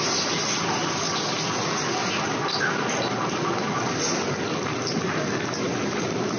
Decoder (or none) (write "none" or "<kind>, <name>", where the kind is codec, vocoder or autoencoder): none